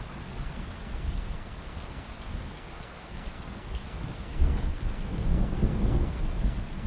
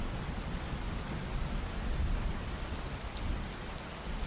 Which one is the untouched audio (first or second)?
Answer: second